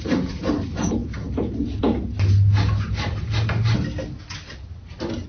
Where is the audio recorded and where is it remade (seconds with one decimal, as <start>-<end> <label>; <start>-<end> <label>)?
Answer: 0.0-5.3 recorded